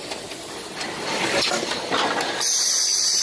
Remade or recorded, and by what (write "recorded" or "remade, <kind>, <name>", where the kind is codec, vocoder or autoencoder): recorded